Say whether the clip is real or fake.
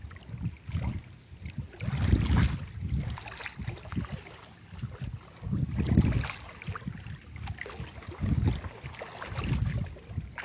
real